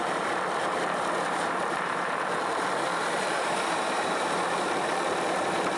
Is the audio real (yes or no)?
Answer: no